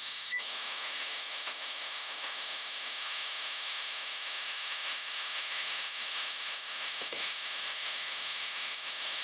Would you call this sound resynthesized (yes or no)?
yes